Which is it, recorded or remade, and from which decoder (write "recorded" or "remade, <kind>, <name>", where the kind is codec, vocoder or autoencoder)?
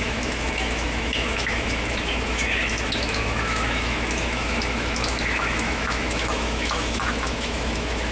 remade, autoencoder, DAC-VAE